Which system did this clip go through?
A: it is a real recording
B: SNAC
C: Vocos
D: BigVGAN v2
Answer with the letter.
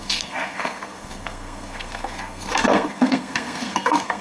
B